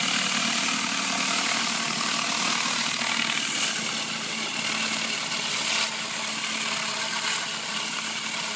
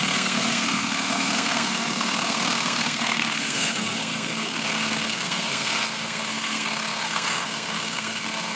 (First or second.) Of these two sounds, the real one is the first